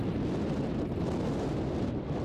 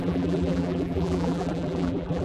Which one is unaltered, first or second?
first